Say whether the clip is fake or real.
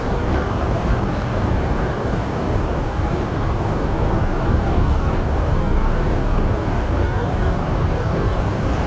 fake